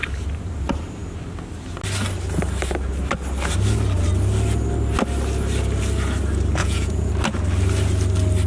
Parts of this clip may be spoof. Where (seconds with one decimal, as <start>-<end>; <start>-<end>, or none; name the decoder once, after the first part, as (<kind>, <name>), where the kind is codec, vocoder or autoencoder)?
6.6-7.1 (vocoder, Vocos)